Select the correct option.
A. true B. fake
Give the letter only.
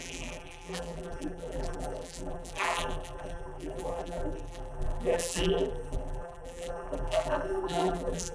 B